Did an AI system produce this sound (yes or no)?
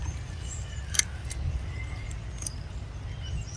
no